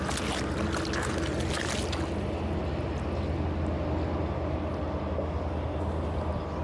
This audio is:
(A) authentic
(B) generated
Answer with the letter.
A